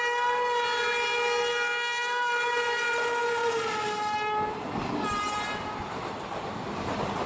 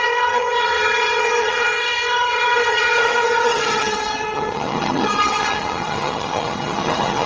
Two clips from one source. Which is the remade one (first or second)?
second